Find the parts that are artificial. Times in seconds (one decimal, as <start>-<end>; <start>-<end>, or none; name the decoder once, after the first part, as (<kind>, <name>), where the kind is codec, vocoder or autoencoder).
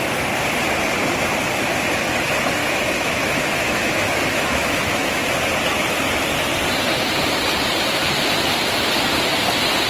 2.6-5.2 (autoencoder, DAC-VAE)